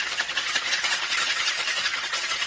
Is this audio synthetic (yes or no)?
yes